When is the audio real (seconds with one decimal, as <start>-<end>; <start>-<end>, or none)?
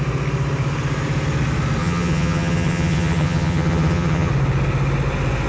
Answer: 0.0-1.8; 4.3-5.5